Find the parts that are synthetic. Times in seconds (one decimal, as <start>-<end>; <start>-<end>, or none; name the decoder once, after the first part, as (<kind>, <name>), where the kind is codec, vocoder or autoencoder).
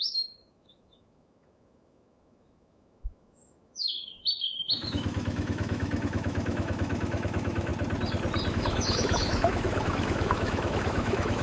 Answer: 0.0-7.7 (autoencoder, DAC-VAE); 8.5-11.4